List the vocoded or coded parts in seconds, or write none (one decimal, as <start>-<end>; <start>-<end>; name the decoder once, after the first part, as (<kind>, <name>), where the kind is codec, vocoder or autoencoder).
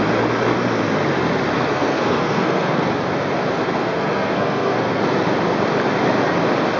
1.7-2.9 (codec, SNAC); 3.6-5.0